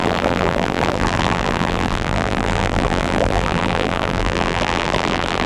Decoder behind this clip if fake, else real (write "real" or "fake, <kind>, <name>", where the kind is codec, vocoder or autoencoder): fake, vocoder, BigVGAN v2